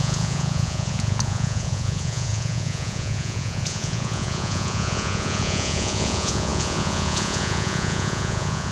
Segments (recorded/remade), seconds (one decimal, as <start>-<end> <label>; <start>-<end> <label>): 0.0-8.7 remade